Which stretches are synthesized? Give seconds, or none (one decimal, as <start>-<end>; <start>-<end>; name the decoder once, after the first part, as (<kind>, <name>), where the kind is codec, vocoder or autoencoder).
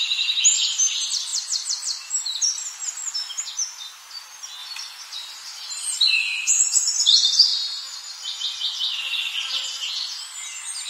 1.3-2.1 (vocoder, BigVGAN v2); 4.6-6.6